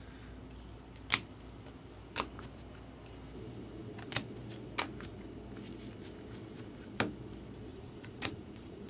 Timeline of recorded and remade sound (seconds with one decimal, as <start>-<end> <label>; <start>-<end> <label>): 0.0-7.7 recorded; 7.7-8.9 remade